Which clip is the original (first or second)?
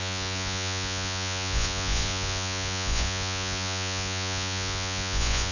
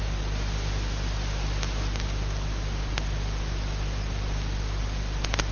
second